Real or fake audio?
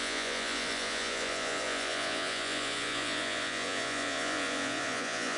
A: fake